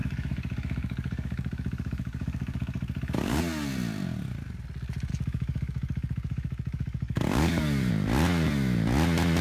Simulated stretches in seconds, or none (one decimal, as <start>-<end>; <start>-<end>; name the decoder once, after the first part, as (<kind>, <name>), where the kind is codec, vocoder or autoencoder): 0.0-3.4 (codec, DAC); 5.1-7.9